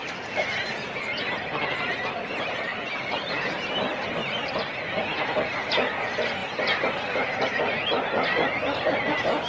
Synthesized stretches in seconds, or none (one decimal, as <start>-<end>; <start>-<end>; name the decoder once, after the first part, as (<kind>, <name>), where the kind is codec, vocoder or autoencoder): none